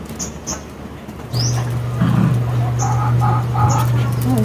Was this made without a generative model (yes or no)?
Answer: yes